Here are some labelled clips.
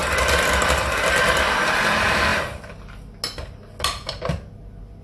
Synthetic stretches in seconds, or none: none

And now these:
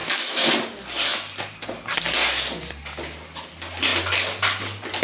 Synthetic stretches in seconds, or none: 0.0-0.5 (autoencoder, DAC-VAE)

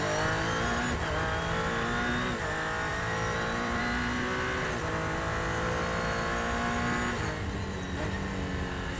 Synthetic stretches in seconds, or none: 2.9-3.8 (vocoder, BigVGAN v2)

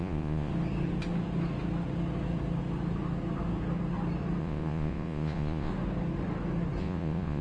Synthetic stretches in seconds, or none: 0.0-0.5 (vocoder, Vocos); 4.4-5.7; 6.8-7.4

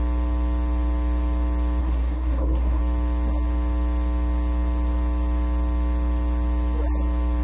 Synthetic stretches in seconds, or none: 1.8-2.8 (codec, SNAC)

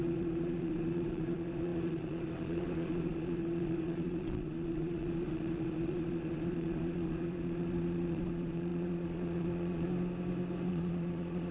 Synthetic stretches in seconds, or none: 0.0-9.9 (vocoder, Vocos); 10.7-11.5